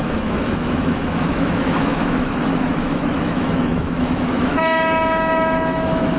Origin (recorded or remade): remade